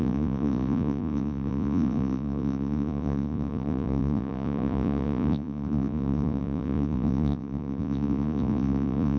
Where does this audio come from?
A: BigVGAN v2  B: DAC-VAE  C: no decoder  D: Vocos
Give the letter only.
D